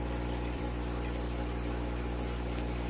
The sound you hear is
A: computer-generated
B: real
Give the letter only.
A